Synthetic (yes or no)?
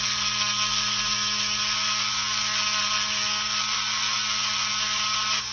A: no